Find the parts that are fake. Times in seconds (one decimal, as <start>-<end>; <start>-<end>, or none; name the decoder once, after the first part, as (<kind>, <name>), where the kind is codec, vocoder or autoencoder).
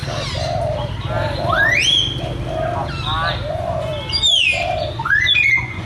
3.5-3.9 (vocoder, Vocos); 4.8-5.9